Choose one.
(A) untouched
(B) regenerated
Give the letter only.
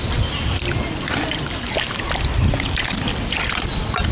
B